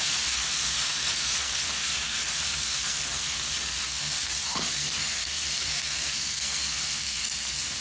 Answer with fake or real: fake